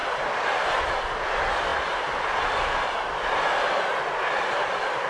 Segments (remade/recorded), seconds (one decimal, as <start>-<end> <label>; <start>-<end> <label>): 0.0-5.1 recorded